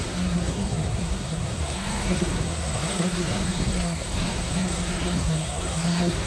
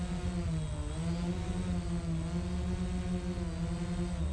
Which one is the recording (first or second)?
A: second